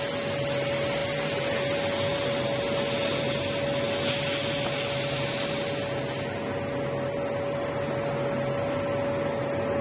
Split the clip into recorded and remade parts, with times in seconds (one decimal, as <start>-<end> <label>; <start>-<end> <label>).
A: 0.0-9.8 recorded